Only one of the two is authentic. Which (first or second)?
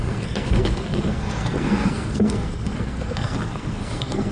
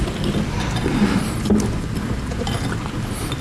second